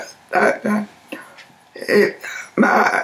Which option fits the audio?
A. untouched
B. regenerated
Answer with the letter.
A